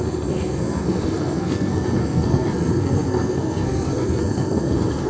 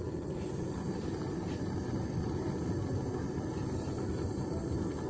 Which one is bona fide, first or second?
second